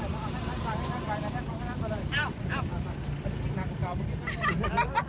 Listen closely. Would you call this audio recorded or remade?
recorded